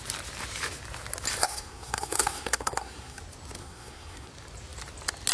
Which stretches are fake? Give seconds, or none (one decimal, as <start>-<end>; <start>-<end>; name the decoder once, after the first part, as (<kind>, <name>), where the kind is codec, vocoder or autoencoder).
1.4-3.2 (codec, SNAC); 3.6-4.3